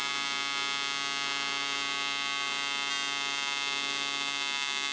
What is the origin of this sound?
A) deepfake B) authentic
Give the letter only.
B